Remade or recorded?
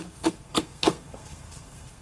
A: remade